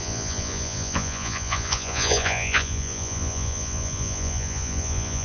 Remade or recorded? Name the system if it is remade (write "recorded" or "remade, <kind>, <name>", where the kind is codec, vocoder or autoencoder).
remade, vocoder, Vocos